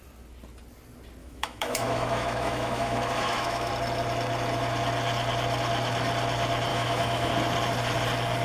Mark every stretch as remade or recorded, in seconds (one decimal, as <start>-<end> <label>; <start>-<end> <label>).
0.0-1.2 recorded; 1.2-3.7 remade; 3.7-6.7 recorded; 6.7-7.3 remade; 7.3-8.4 recorded